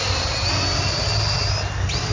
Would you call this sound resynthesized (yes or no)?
no